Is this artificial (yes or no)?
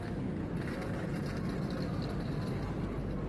no